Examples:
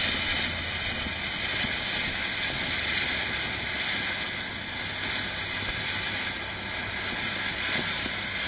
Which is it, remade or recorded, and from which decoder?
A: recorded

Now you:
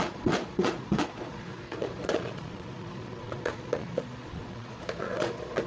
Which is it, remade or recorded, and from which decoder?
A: remade, vocoder, Vocos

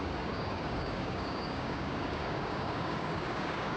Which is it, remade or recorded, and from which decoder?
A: remade, codec, DAC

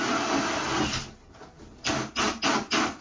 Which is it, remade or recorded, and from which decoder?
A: recorded